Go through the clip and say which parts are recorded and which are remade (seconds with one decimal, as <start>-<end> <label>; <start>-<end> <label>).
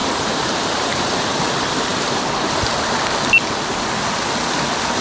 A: 0.0-1.3 remade; 1.3-5.0 recorded